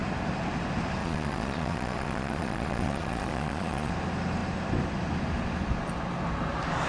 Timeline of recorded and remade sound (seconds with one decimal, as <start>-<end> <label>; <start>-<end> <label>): 0.0-1.0 recorded; 1.0-3.9 remade; 3.9-6.9 recorded